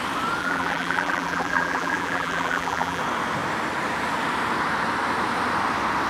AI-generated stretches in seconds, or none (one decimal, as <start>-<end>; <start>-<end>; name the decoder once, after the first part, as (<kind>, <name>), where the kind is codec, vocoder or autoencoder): 0.4-3.0 (vocoder, BigVGAN v2)